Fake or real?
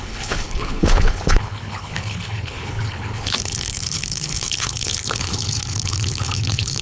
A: fake